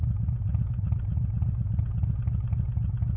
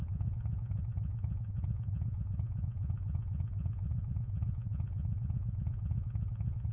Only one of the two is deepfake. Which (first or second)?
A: second